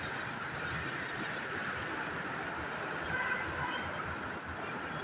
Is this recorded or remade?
remade